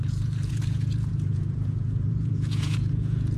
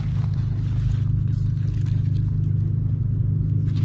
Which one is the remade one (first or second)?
first